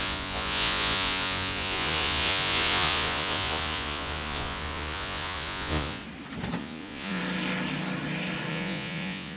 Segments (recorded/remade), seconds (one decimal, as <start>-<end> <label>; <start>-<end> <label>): 0.0-6.0 remade; 6.0-6.6 recorded; 6.6-7.2 remade; 7.2-8.5 recorded; 8.5-9.4 remade